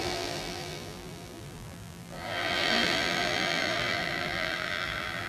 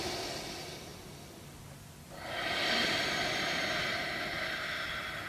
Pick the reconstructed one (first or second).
first